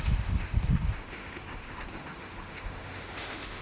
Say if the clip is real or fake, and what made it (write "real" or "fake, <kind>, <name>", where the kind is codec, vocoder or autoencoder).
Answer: fake, autoencoder, DAC-VAE